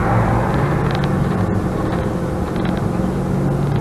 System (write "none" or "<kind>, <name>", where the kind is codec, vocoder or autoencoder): none